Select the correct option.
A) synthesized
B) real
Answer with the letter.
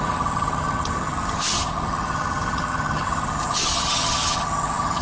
A